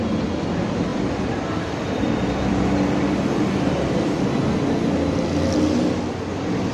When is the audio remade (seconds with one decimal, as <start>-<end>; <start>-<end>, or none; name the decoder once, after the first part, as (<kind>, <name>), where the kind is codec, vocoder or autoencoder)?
0.9-4.3 (vocoder, BigVGAN v2)